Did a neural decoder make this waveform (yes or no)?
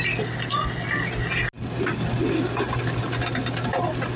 no